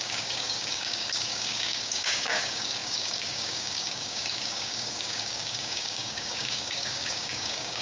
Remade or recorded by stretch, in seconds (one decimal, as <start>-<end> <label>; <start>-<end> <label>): 0.0-7.8 remade